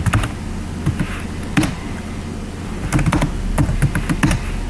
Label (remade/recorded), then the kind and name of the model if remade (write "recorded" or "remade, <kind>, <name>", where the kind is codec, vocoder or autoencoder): recorded